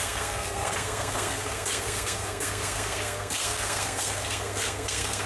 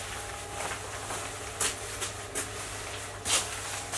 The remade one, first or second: first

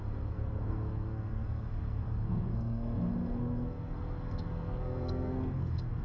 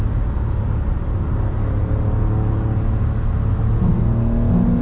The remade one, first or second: first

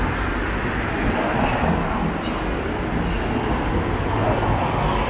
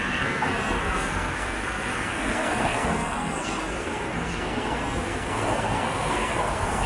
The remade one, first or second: second